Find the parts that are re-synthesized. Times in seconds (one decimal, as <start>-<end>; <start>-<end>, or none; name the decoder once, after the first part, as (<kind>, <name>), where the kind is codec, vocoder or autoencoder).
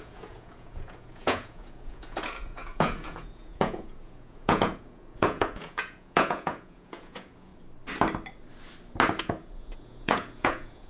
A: 0.0-7.5 (vocoder, Vocos); 9.2-10.9